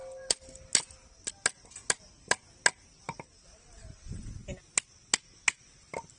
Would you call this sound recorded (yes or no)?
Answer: yes